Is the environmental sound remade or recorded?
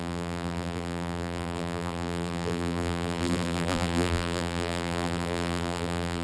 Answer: remade